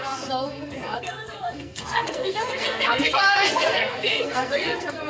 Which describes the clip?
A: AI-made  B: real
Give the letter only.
A